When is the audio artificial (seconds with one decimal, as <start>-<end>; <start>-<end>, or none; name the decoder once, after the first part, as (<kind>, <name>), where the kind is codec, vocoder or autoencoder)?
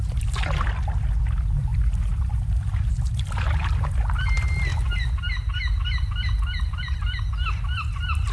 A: none